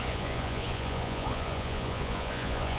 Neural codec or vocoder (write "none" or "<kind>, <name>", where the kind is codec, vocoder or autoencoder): vocoder, Vocos